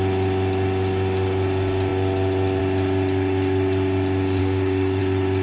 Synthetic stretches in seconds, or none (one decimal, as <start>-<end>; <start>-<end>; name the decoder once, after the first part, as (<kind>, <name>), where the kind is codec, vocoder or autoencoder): 4.4-5.0 (codec, DAC)